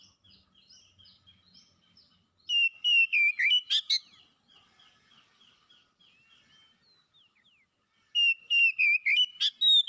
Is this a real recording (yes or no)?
yes